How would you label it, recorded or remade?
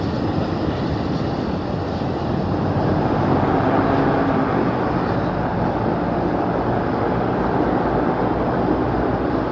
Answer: recorded